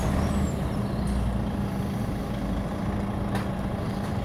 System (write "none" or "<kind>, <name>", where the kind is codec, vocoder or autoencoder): none